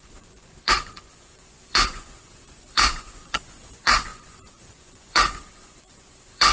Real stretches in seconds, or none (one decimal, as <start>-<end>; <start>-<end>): none